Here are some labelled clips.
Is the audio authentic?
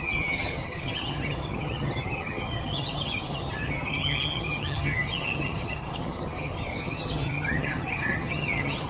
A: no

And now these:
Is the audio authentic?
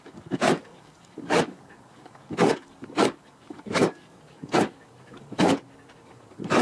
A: no